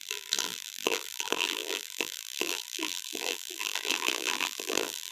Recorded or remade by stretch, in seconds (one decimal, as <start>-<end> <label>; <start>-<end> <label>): 0.0-5.1 remade